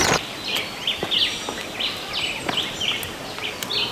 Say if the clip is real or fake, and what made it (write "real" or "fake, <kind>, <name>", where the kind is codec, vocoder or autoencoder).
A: real